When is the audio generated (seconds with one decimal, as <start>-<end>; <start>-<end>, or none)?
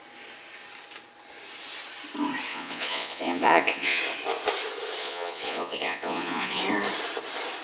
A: 2.5-4.0; 5.0-6.6